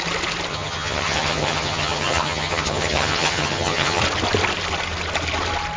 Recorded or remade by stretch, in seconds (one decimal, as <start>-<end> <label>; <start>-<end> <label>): 0.0-0.5 recorded; 0.5-4.0 remade; 4.0-5.8 recorded